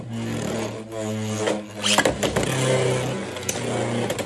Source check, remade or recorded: recorded